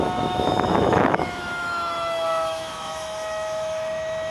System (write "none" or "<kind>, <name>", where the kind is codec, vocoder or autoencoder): autoencoder, DAC-VAE